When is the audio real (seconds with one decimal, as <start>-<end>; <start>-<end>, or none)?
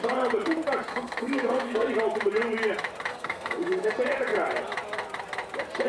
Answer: 0.0-0.9; 1.9-3.1; 3.9-5.9